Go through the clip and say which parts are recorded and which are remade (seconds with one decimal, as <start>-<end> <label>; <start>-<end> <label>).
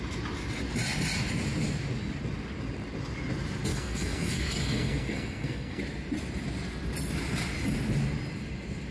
0.0-3.7 recorded; 3.7-5.8 remade; 5.8-8.9 recorded